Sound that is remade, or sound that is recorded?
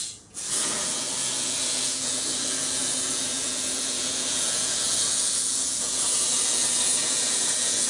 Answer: remade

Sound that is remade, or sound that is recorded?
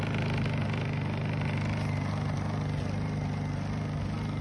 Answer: recorded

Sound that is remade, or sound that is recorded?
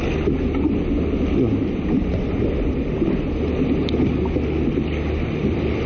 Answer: recorded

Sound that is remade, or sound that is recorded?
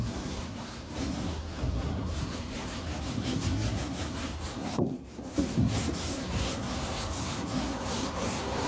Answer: remade